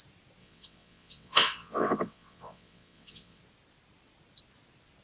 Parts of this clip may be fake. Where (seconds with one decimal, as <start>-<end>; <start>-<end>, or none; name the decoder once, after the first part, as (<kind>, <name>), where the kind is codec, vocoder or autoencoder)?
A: 0.4-3.4 (vocoder, WaveNeXt)